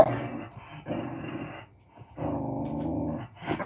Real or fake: real